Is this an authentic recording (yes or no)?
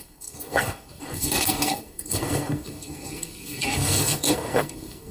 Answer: no